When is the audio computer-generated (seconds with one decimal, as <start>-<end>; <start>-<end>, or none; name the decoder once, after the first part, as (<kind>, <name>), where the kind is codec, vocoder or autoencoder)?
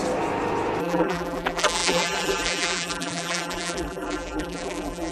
0.8-5.1 (vocoder, BigVGAN v2)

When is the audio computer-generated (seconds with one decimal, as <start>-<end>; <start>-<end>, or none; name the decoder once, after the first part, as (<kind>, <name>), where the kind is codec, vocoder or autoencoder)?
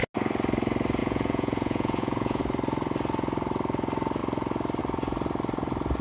1.0-2.4 (vocoder, Vocos)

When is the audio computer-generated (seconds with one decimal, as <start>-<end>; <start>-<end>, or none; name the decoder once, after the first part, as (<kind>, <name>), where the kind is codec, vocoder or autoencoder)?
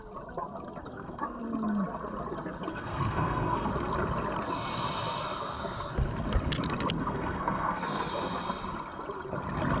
0.9-1.4 (codec, SNAC); 2.7-3.7; 7.0-8.1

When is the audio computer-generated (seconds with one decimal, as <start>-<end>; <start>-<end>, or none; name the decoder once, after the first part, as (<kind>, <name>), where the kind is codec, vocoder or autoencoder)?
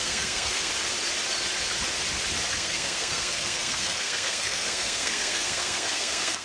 0.0-0.7 (codec, SNAC); 2.5-6.4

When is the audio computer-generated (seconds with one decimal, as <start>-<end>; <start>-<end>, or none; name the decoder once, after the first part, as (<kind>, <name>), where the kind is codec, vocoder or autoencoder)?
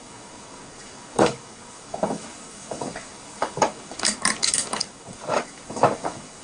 0.0-6.4 (codec, DAC)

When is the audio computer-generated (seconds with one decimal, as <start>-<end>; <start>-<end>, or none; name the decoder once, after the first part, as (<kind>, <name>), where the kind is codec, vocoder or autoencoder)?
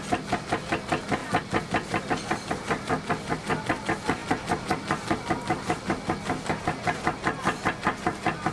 none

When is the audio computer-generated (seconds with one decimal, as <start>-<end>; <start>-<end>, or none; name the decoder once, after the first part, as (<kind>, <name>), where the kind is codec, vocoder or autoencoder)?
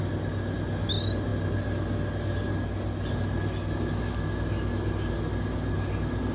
none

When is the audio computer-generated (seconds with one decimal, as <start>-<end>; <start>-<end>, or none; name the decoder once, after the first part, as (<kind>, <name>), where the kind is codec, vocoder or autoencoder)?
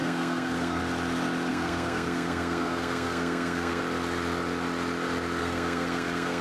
0.0-0.8 (codec, SNAC); 1.5-3.8; 5.4-6.4